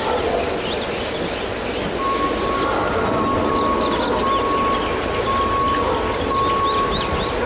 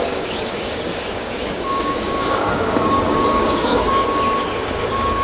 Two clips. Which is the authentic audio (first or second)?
first